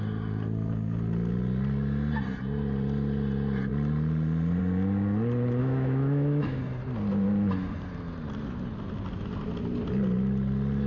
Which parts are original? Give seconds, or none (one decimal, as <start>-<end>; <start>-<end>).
0.0-5.6; 6.6-10.9